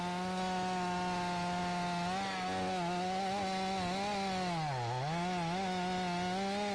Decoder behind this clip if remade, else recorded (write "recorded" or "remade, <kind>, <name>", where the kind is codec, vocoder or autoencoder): recorded